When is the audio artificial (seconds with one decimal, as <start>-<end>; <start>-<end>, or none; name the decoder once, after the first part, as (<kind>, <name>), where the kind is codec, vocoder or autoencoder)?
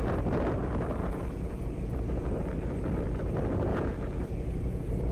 1.0-2.3 (vocoder, Vocos); 3.7-5.1